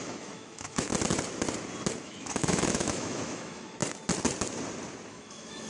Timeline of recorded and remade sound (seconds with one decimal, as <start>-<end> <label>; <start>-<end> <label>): 0.0-0.9 remade; 0.9-2.0 recorded; 2.0-3.8 remade; 3.8-5.1 recorded; 5.1-5.7 remade